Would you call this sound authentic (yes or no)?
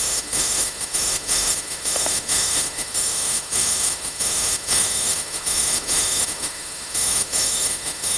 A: no